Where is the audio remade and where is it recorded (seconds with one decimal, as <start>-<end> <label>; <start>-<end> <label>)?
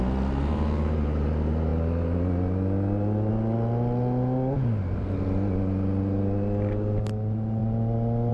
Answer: 0.0-8.3 recorded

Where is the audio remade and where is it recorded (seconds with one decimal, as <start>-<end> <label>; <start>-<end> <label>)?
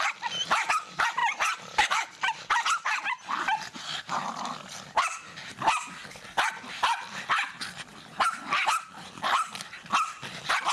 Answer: 0.0-1.2 recorded; 1.2-3.3 remade; 3.3-10.7 recorded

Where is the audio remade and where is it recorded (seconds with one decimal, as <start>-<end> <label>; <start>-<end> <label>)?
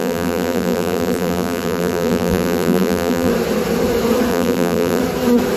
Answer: 0.0-3.3 remade; 3.3-4.3 recorded; 4.3-5.0 remade; 5.0-5.6 recorded